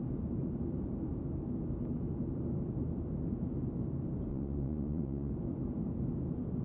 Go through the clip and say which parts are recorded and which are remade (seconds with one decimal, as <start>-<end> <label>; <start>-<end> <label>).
0.0-4.3 recorded; 4.3-5.3 remade; 5.3-6.6 recorded